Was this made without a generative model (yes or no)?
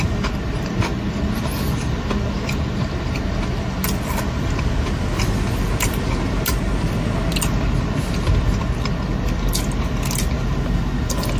yes